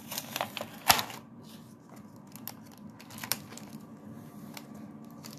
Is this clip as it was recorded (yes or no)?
yes